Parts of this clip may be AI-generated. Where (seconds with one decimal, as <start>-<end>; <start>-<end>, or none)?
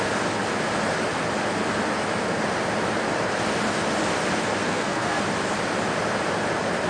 4.6-5.2